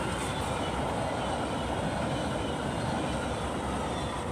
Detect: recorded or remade recorded